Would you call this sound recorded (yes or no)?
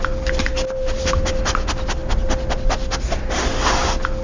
yes